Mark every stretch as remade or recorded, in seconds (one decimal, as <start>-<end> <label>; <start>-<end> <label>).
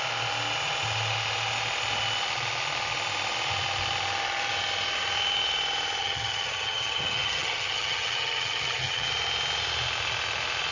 0.0-6.0 recorded; 6.0-9.1 remade; 9.1-10.7 recorded